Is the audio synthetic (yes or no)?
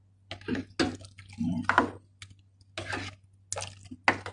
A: no